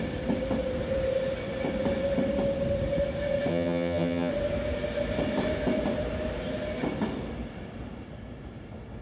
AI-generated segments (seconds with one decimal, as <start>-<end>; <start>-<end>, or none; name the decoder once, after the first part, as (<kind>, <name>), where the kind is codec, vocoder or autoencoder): 3.5-4.3 (vocoder, HiFi-GAN)